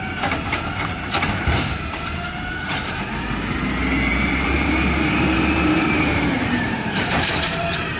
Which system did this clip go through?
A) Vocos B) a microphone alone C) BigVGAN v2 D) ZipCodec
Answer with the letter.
C